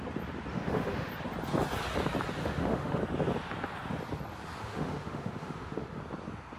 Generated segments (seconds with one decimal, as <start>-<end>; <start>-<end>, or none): 0.5-1.1; 2.4-3.0; 4.6-6.0